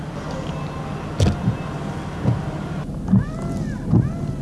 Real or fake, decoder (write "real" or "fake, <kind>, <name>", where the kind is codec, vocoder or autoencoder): real